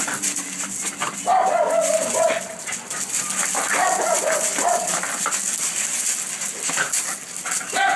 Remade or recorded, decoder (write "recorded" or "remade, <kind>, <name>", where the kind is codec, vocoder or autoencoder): recorded